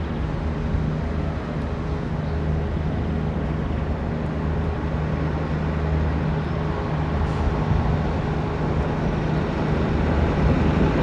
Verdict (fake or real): real